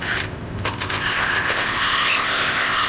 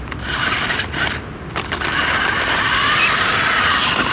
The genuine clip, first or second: second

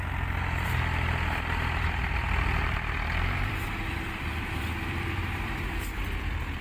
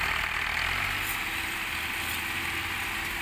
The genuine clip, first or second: second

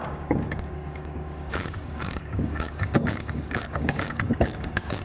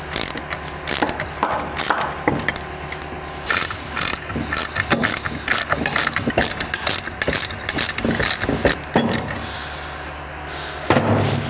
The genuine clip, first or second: second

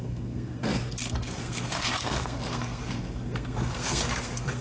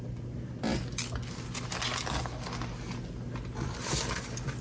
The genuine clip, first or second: second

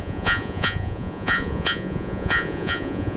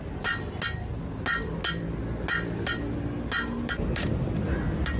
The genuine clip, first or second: second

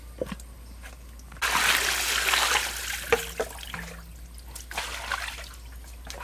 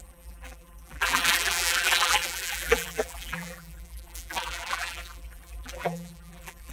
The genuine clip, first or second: first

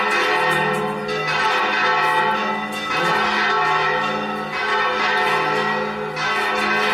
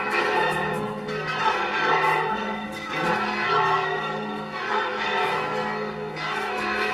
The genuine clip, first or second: first